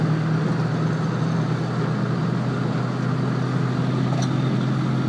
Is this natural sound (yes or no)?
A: yes